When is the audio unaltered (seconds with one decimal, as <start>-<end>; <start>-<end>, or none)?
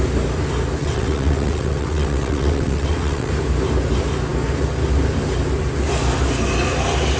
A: 0.0-0.8; 3.3-7.2